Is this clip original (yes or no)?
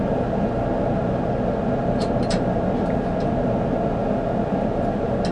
yes